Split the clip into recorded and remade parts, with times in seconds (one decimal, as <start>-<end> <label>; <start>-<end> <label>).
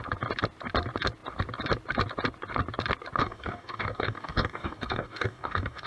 0.0-3.2 recorded; 3.2-5.9 remade